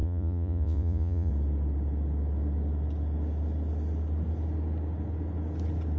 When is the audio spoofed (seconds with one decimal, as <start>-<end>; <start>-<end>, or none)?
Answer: 0.0-1.3